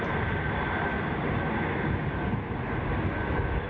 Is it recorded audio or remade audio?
recorded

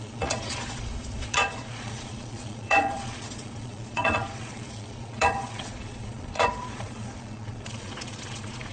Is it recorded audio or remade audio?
remade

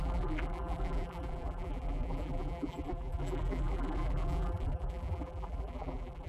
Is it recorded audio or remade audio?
remade